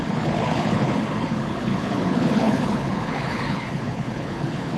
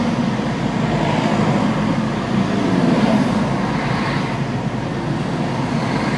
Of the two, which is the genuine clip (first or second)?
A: second